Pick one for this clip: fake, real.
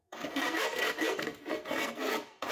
fake